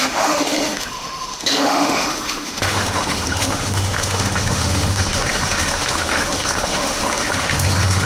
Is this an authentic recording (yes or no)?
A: no